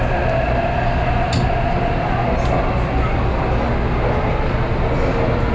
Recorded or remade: recorded